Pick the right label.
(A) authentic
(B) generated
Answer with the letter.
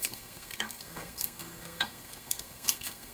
B